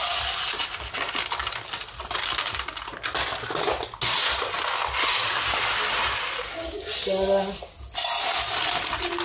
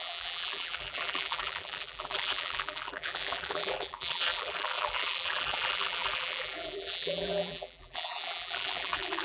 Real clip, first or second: first